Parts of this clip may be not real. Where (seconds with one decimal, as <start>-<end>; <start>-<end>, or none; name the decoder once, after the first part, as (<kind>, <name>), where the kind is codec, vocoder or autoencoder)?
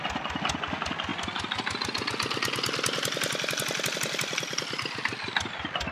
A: none